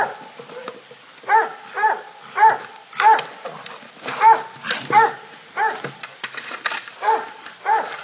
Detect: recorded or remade recorded